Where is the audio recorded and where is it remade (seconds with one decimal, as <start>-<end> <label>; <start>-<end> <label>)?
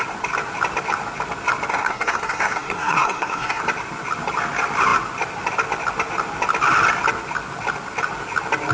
0.0-1.7 recorded; 1.7-3.6 remade; 3.6-8.7 recorded